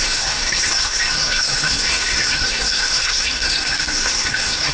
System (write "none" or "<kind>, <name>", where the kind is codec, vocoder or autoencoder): codec, SNAC